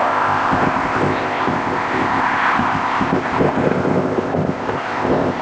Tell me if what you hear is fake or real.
fake